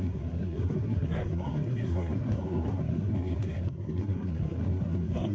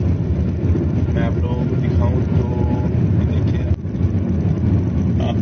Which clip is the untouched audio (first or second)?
second